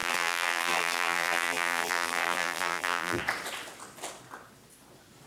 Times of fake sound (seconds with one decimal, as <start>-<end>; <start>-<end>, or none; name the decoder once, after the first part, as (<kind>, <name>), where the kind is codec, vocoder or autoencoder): 0.0-3.2 (vocoder, BigVGAN v2)